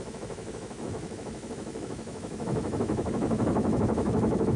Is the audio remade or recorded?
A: remade